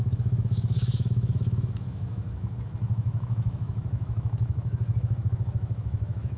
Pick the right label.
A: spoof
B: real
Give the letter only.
A